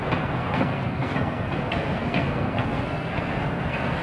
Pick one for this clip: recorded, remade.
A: remade